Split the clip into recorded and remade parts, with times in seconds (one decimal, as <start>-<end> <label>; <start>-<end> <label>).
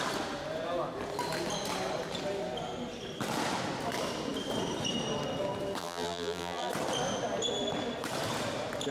0.0-5.8 recorded; 5.8-6.7 remade; 6.7-8.9 recorded